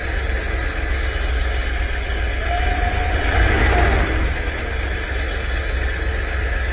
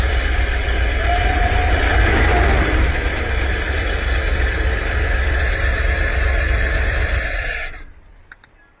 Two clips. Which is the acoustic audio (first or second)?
first